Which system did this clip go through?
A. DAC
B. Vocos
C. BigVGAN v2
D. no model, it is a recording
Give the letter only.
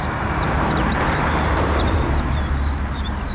C